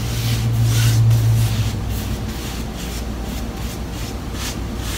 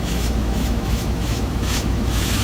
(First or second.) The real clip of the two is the first